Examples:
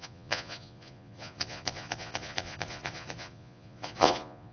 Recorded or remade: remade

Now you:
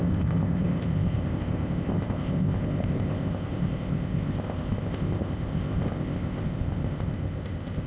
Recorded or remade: remade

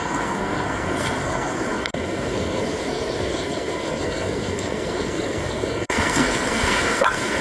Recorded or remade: remade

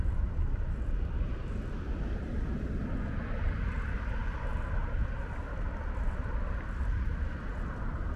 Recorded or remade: recorded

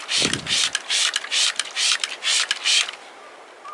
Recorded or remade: recorded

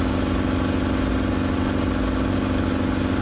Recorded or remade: recorded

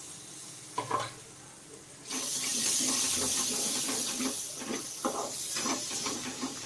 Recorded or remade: recorded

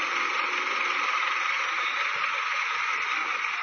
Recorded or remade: recorded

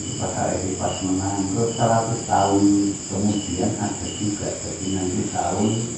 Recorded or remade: recorded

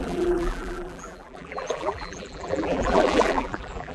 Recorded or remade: remade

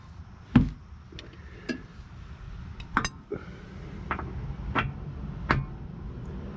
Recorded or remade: recorded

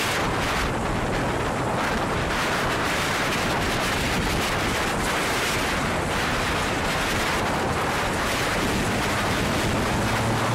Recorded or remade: recorded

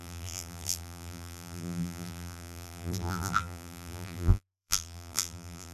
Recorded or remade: remade